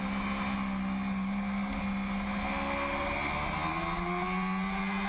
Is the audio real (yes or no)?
yes